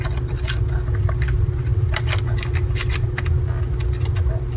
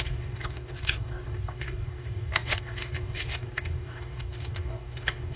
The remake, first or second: second